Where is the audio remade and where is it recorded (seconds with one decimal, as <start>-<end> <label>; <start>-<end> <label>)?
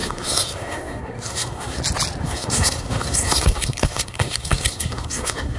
0.0-1.8 remade; 1.8-2.2 recorded; 2.2-5.6 remade